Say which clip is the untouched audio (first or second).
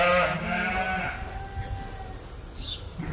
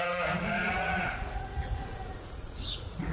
first